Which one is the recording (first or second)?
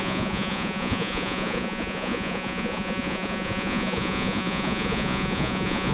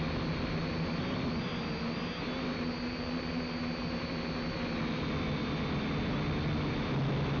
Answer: second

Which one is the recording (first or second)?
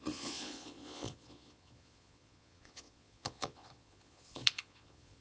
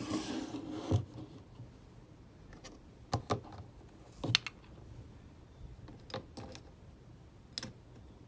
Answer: second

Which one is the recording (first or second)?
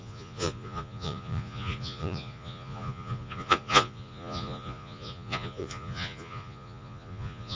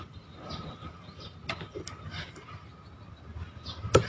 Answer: second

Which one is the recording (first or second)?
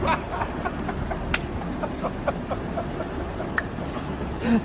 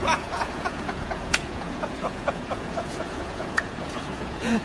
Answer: first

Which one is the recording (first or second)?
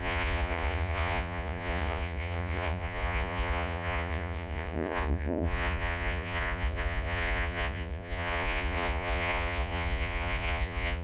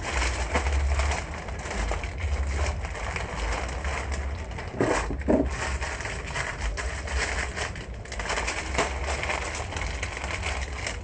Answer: second